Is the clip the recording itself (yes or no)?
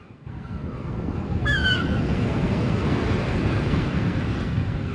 no